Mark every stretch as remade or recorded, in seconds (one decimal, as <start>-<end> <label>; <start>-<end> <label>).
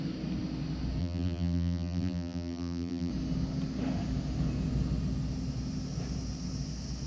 0.0-1.0 recorded; 1.0-3.1 remade; 3.1-7.1 recorded